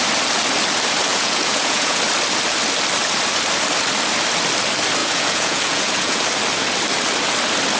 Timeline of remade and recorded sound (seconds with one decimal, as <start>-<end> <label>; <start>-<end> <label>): 0.0-1.1 recorded; 1.1-2.0 remade; 2.0-5.0 recorded; 5.0-6.2 remade; 6.2-7.8 recorded